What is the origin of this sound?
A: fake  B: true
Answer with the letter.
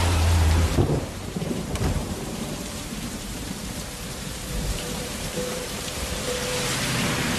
A